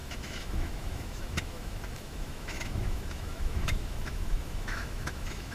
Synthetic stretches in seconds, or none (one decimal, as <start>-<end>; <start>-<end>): 0.0-5.5